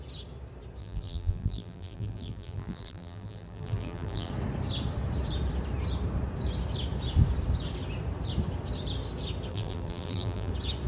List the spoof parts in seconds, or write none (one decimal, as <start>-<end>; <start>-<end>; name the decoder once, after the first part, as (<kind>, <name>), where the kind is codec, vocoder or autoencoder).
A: 0.8-4.3 (vocoder, BigVGAN v2); 9.5-10.5